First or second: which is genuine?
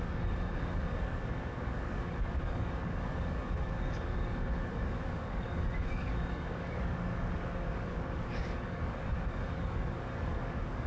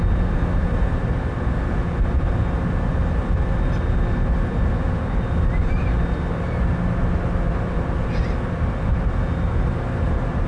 second